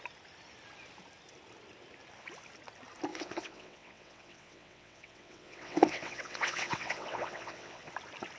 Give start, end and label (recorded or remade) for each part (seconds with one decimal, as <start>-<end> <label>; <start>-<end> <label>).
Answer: 0.0-3.1 recorded; 3.1-7.9 remade; 7.9-8.4 recorded